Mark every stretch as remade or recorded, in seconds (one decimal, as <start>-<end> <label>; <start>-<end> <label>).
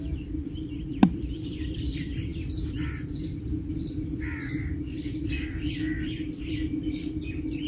0.0-7.7 remade